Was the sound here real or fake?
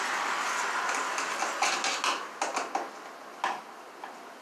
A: real